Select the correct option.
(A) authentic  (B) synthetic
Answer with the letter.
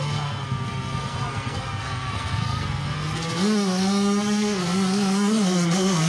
B